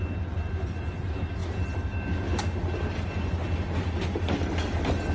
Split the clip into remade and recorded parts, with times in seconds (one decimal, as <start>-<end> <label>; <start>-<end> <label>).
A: 0.0-5.1 recorded